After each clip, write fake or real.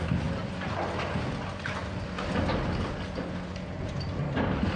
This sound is real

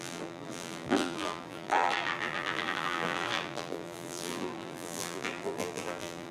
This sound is fake